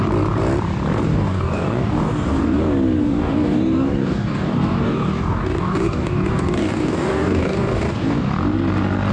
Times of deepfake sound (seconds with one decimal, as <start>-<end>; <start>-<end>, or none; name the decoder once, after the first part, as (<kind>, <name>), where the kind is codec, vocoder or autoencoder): 1.1-2.6 (codec, DAC); 3.0-8.3